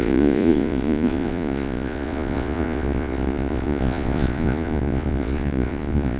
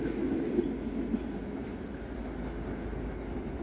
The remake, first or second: first